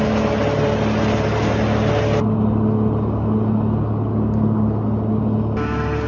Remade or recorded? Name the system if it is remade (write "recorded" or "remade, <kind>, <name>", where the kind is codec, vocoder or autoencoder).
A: recorded